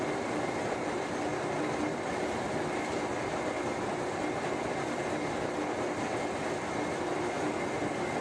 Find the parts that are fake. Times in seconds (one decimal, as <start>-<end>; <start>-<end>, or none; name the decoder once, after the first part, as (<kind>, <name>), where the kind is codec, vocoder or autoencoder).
none

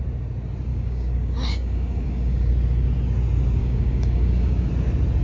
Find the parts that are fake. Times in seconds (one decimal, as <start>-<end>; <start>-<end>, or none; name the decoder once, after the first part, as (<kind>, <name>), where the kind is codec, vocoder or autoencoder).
0.7-2.5 (codec, DAC); 3.6-4.7

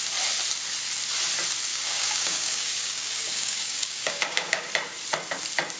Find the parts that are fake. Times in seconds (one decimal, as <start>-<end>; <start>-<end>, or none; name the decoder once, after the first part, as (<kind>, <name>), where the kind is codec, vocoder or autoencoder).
1.7-4.7 (codec, DAC)